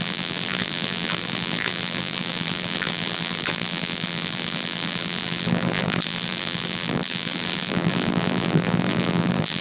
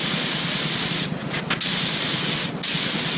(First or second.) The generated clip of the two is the first